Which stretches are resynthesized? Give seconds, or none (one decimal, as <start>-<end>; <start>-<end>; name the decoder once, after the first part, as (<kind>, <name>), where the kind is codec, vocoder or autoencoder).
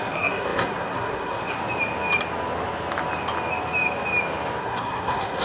0.0-1.6 (codec, SNAC); 4.6-5.4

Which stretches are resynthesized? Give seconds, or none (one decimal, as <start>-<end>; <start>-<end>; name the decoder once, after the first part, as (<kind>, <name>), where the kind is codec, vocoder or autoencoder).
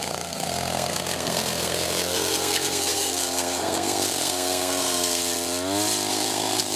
0.0-5.2 (codec, SNAC); 6.1-6.8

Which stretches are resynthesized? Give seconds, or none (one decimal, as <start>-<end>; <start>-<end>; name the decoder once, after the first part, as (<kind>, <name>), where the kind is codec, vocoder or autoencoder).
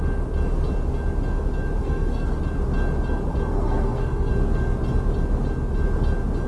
1.8-2.4 (codec, SNAC); 3.5-4.3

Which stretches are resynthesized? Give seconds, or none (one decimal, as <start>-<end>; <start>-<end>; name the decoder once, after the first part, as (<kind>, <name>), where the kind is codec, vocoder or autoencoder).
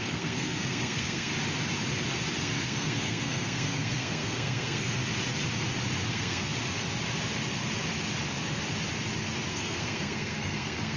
0.0-1.3 (codec, SNAC); 2.4-5.0; 6.1-6.5; 9.5-11.0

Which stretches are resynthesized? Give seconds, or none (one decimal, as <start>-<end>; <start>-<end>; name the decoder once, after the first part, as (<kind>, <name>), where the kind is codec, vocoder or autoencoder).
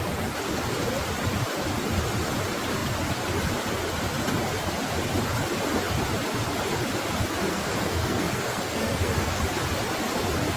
7.5-9.4 (codec, SNAC)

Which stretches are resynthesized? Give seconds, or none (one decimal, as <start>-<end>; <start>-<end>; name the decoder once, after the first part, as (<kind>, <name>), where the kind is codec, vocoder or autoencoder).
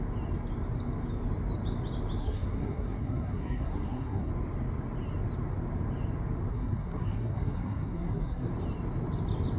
2.2-4.3 (codec, SNAC); 6.5-8.5